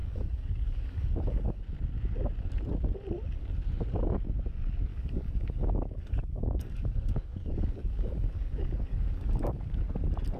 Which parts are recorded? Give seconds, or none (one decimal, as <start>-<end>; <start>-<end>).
1.6-4.9; 9.8-10.4